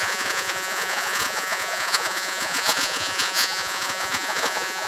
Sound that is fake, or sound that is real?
fake